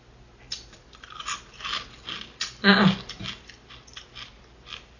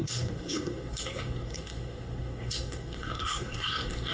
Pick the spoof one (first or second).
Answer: second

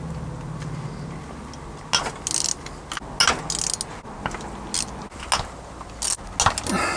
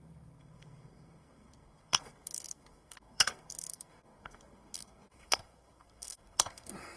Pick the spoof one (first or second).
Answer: second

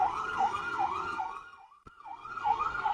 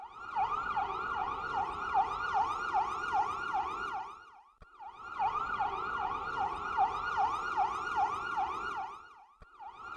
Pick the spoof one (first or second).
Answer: first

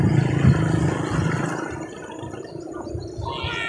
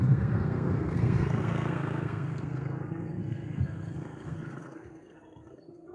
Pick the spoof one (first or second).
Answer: second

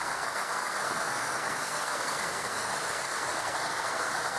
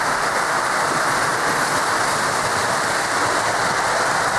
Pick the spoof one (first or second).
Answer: first